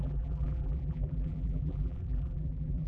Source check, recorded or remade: remade